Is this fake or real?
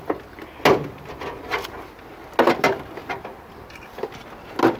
real